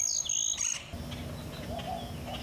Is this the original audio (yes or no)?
yes